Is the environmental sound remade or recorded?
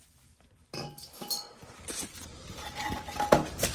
recorded